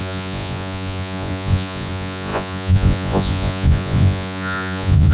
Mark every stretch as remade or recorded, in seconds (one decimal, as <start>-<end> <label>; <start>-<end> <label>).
0.0-5.1 remade